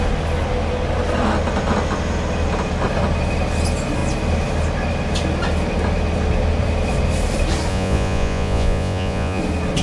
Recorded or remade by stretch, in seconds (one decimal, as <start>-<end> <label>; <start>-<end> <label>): 0.0-7.7 recorded; 7.7-9.4 remade; 9.4-9.8 recorded